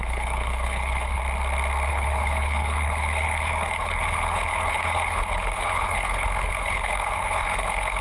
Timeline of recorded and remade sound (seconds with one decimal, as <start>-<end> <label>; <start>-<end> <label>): 0.0-1.2 remade; 1.2-1.9 recorded; 1.9-8.0 remade